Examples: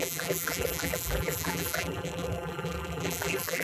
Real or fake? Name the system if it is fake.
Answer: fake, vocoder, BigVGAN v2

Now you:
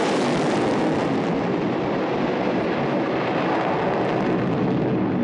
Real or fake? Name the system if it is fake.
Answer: real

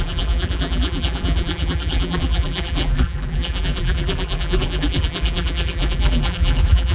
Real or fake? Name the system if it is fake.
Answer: fake, vocoder, BigVGAN v2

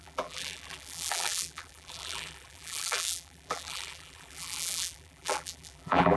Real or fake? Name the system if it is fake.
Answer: fake, vocoder, BigVGAN v2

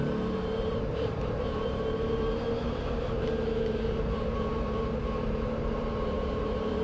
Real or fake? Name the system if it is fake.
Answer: fake, vocoder, BigVGAN v2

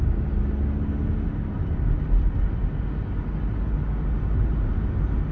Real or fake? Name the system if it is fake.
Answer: real